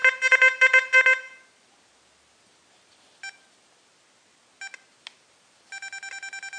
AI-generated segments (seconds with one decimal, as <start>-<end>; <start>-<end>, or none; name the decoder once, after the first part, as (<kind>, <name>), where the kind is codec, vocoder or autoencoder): none